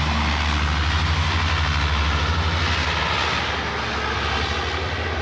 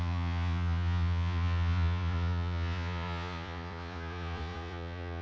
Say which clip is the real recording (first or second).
first